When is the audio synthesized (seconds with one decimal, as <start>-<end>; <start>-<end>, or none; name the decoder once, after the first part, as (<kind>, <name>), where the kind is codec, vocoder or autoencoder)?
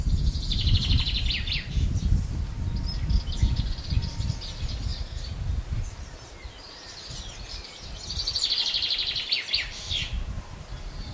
3.4-4.0 (vocoder, Vocos)